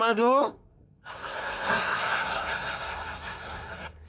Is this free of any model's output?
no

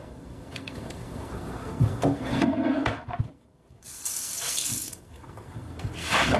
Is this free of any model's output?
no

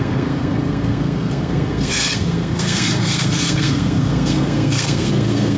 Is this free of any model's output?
no